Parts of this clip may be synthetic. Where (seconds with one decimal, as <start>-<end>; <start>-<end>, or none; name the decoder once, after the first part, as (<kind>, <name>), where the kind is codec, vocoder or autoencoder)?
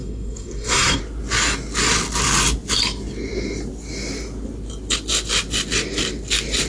0.0-1.0 (codec, SNAC)